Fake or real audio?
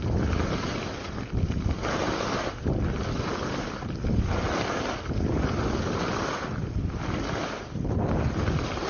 real